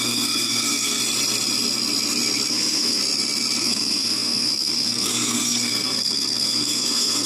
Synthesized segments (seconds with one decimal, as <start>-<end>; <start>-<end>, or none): 0.0-1.0; 2.5-3.0; 3.6-7.3